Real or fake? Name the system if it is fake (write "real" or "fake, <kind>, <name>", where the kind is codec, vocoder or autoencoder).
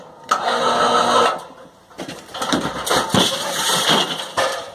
real